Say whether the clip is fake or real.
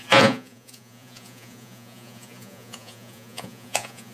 fake